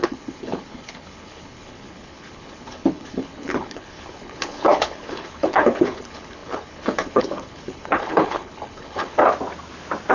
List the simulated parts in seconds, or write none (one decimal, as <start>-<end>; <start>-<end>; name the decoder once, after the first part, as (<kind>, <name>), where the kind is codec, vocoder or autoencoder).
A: 0.0-9.2 (codec, HILCodec)